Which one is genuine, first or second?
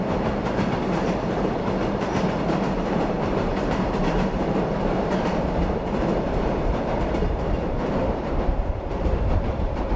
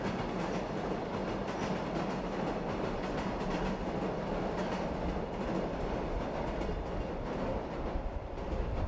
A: second